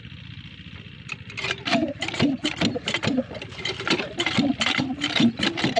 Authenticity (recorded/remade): recorded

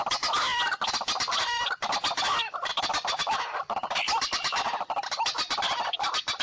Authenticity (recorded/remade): recorded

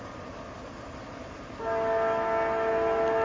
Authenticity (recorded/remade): recorded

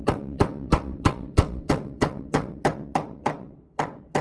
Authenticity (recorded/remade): remade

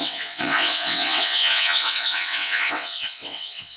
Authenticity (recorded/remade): remade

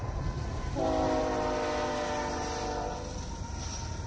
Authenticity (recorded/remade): recorded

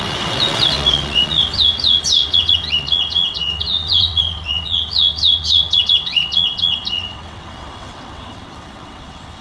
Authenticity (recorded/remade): remade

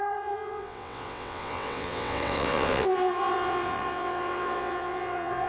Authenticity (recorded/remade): remade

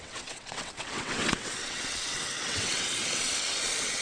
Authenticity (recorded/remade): remade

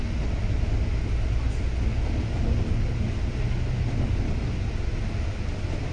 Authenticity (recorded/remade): recorded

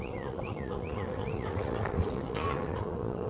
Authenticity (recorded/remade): remade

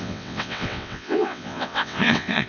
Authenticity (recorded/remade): remade